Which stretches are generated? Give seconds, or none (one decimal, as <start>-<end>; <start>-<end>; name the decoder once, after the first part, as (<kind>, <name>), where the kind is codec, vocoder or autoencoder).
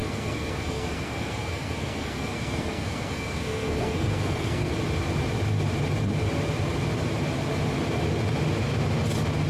0.0-4.7 (codec, SNAC)